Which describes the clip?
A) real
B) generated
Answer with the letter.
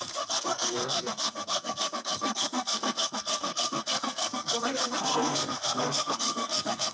B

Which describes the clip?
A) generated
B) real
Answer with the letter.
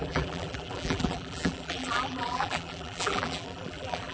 A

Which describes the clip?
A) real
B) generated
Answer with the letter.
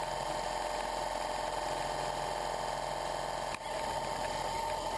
A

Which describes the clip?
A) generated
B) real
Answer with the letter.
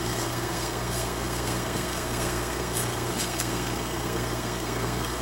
A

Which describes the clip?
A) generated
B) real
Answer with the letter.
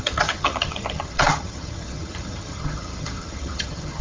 A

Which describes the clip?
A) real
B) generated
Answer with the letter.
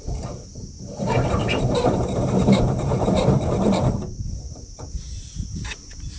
B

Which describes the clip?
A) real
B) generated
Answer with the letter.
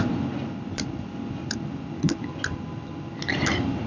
A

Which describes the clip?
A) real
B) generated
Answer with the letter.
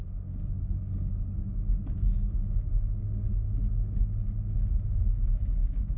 A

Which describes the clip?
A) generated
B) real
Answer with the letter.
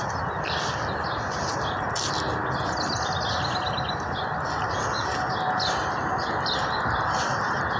B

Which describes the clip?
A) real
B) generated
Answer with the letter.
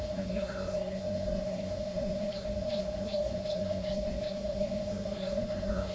B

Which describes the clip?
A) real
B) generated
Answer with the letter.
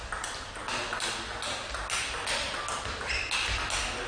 A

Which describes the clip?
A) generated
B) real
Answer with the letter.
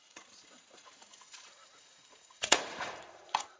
A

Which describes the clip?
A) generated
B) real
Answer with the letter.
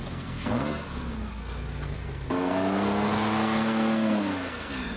A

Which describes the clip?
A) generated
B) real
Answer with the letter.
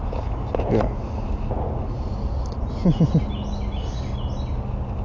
B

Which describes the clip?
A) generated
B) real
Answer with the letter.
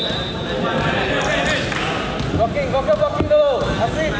B